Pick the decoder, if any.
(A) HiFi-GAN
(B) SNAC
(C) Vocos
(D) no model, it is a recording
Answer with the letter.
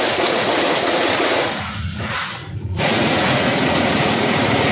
C